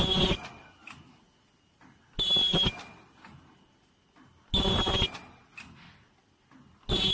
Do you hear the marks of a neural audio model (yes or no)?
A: no